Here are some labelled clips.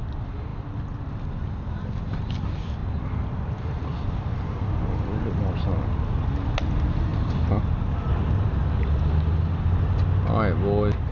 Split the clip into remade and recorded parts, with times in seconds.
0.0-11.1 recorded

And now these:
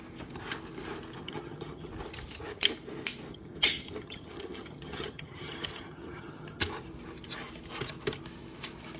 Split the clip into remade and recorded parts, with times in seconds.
0.0-1.2 recorded; 1.2-1.9 remade; 1.9-3.3 recorded; 3.3-6.6 remade; 6.6-9.0 recorded

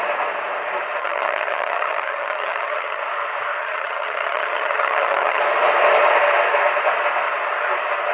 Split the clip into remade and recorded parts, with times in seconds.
0.0-1.0 recorded; 1.0-3.0 remade; 3.0-3.6 recorded; 3.6-5.4 remade; 5.4-8.1 recorded

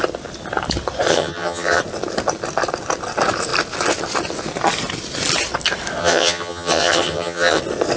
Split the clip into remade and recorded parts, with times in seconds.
0.0-1.1 recorded; 1.1-1.8 remade; 1.8-6.0 recorded; 6.0-7.6 remade; 7.6-8.0 recorded

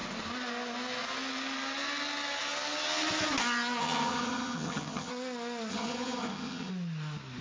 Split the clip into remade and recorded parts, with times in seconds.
0.0-3.8 recorded; 3.8-5.1 remade; 5.1-5.7 recorded; 5.7-6.7 remade; 6.7-7.4 recorded

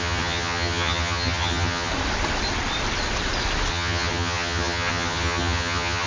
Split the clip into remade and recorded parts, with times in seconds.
0.0-1.9 remade; 1.9-3.7 recorded; 3.7-6.1 remade

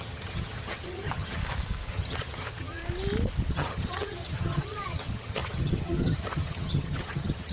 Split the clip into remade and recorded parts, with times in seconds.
0.0-1.4 remade; 1.4-1.9 recorded; 1.9-2.8 remade; 2.8-3.5 recorded; 3.5-7.5 remade

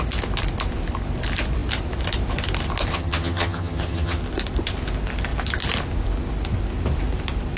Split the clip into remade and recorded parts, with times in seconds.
0.0-2.9 recorded; 2.9-4.2 remade; 4.2-7.6 recorded